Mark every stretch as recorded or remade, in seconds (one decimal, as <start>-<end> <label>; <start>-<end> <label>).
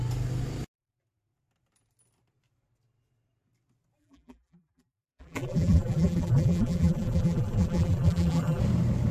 0.0-4.0 recorded; 4.0-8.6 remade; 8.6-9.1 recorded